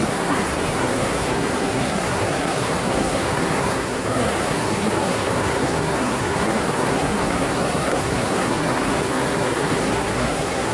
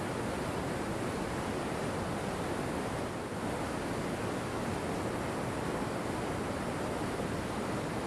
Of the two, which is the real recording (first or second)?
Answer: second